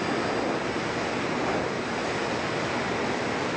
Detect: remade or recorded recorded